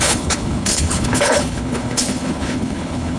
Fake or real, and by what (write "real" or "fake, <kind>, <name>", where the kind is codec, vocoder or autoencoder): fake, codec, HILCodec